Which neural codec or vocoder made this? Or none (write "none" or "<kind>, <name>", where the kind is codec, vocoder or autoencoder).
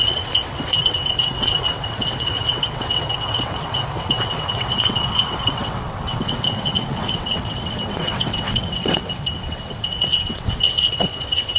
vocoder, WaveNeXt